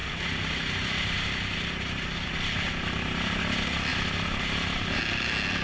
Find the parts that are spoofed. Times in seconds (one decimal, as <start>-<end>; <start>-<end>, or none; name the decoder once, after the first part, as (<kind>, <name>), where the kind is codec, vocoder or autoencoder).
0.0-3.4 (vocoder, BigVGAN v2); 3.9-5.0